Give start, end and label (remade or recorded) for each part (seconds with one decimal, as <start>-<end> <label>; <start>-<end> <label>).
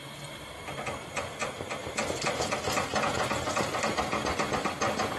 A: 0.0-5.2 recorded